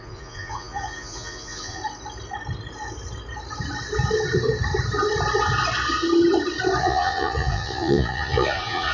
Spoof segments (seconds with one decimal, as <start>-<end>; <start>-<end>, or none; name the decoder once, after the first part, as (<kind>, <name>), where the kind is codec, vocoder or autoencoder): 0.0-1.8 (vocoder, Vocos); 6.8-8.9